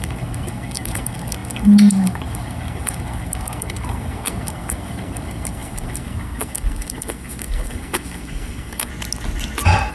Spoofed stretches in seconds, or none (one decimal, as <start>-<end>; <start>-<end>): 0.0-8.9